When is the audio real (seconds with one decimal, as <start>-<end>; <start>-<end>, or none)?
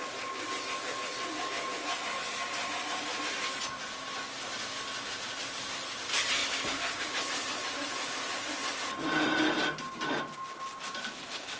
0.0-11.6